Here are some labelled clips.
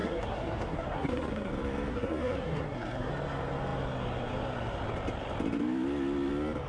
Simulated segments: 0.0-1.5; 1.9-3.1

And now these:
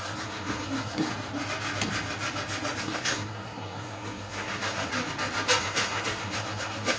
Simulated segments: 0.0-1.1; 2.8-4.9; 5.6-7.0

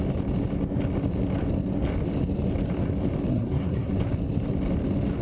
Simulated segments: 3.3-3.9

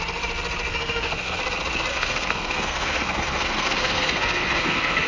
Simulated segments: 0.7-1.4; 1.9-5.1